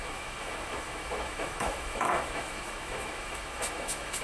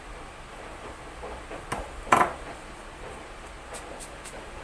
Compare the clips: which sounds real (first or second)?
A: second